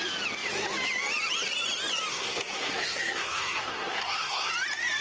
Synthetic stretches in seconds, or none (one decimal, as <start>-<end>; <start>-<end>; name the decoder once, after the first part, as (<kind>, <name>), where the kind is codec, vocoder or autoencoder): 2.1-4.5 (codec, SNAC)